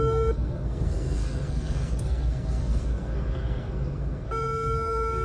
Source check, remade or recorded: remade